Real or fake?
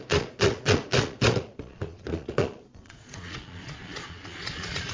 fake